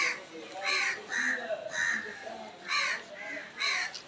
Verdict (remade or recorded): recorded